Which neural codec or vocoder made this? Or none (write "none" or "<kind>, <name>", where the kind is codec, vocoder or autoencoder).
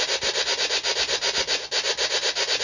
none